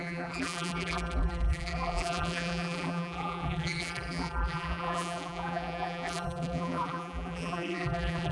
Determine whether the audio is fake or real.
fake